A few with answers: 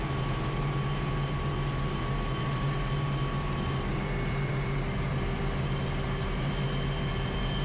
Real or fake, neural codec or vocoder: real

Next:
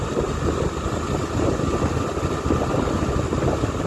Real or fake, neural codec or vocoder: real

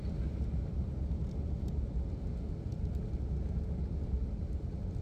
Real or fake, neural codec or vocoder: real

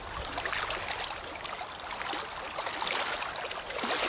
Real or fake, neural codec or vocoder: real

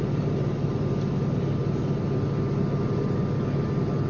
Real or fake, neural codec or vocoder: real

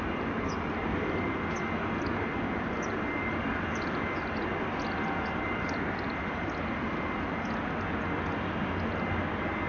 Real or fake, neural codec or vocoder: real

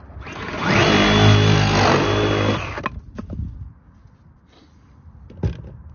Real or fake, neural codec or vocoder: real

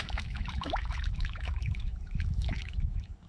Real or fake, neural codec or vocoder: fake, autoencoder, DAC-VAE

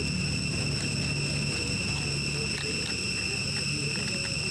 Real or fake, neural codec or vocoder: real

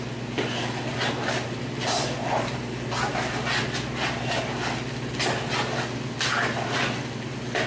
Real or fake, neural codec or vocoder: real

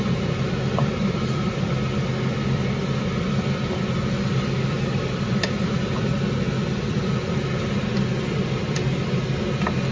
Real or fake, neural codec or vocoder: real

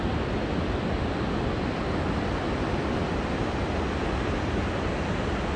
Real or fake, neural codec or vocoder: real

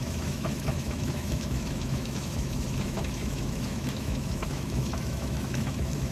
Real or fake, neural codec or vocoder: fake, autoencoder, DAC-VAE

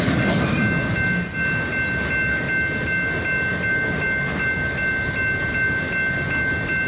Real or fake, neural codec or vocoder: real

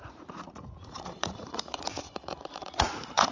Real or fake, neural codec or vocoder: fake, vocoder, Vocos